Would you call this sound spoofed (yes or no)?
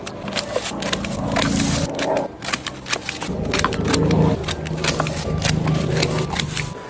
no